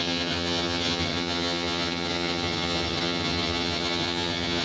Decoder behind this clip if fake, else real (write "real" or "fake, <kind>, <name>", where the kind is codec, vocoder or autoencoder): fake, vocoder, HiFi-GAN